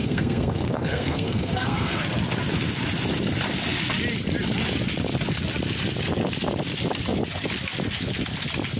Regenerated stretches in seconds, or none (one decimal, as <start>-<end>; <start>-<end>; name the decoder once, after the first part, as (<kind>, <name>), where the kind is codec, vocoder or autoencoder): 0.0-2.0 (codec, SNAC)